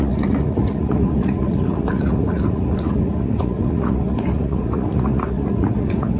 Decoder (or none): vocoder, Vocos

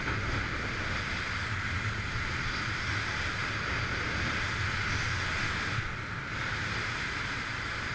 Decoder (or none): none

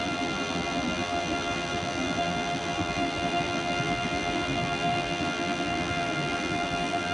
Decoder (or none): vocoder, BigVGAN v2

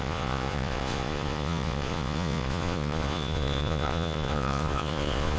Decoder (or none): vocoder, Vocos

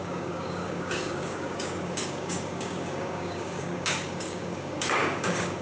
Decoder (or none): codec, DAC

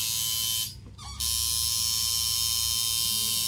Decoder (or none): none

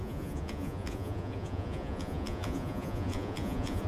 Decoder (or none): vocoder, Vocos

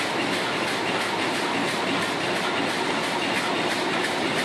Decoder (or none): none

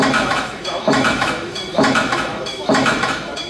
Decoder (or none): autoencoder, DAC-VAE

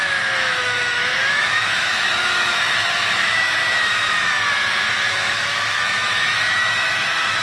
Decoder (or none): autoencoder, DAC-VAE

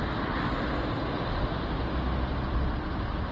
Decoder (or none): none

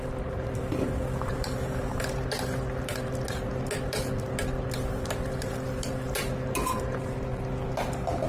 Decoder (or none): none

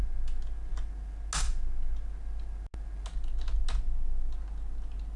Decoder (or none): none